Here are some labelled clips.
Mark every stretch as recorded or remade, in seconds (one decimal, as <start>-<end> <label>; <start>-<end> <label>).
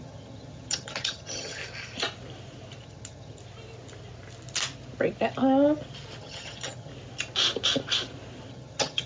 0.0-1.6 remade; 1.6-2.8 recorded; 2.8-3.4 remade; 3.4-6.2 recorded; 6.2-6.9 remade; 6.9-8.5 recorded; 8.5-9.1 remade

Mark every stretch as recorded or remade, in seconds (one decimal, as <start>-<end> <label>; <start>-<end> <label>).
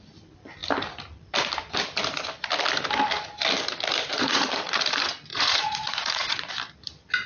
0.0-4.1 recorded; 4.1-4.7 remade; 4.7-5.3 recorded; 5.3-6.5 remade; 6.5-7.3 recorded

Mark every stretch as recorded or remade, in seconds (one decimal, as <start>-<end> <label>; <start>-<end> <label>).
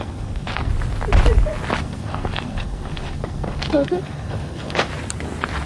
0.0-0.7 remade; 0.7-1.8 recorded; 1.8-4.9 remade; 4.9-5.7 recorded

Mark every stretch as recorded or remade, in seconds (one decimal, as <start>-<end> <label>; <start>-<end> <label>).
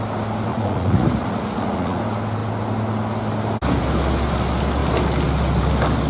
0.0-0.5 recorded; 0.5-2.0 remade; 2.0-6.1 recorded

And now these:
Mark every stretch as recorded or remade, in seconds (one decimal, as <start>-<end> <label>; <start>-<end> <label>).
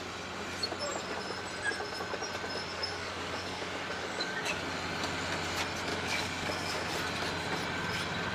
0.0-2.7 recorded; 2.7-4.6 remade; 4.6-5.9 recorded; 5.9-6.9 remade; 6.9-8.3 recorded